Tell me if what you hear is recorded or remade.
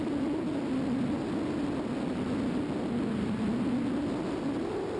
recorded